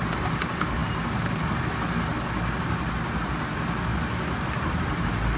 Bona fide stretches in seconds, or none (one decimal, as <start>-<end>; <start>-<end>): 0.0-5.4